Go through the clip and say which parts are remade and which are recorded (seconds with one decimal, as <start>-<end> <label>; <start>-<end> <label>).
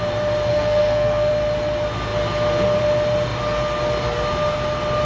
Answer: 0.0-0.5 recorded; 0.5-1.3 remade; 1.3-5.0 recorded